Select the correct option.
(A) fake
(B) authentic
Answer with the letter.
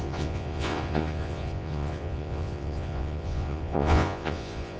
A